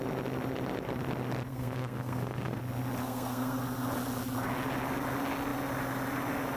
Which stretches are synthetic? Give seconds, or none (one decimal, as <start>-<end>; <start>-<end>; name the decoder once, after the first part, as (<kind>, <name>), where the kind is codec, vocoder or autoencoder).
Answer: 1.5-2.6 (codec, SNAC); 3.0-3.6